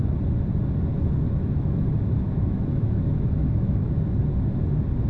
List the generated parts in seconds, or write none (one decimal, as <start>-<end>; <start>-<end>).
0.9-4.0